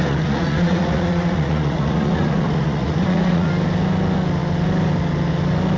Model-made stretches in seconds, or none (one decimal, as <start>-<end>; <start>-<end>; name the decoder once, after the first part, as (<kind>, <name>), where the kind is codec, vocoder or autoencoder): 0.0-3.5 (vocoder, Vocos)